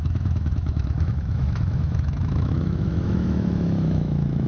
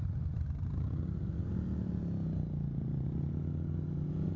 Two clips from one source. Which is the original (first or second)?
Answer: second